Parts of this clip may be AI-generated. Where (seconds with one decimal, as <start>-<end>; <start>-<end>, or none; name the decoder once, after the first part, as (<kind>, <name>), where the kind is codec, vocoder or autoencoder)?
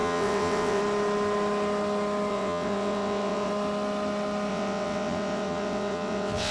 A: 0.0-0.8 (vocoder, WaveNeXt); 2.3-3.5; 4.5-6.5